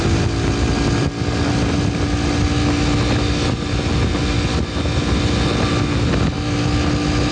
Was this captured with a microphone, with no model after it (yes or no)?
yes